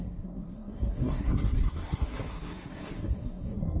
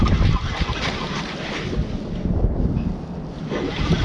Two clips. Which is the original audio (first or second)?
second